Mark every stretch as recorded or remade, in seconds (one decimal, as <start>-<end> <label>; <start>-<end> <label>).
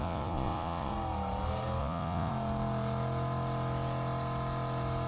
0.0-0.9 remade; 0.9-1.8 recorded; 1.8-2.3 remade; 2.3-5.1 recorded